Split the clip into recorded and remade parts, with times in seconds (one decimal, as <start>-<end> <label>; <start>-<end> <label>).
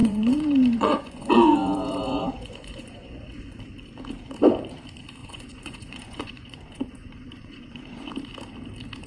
0.0-3.6 remade; 3.6-5.2 recorded; 5.2-8.1 remade; 8.1-9.1 recorded